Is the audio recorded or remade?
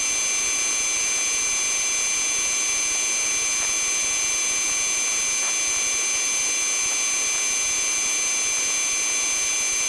recorded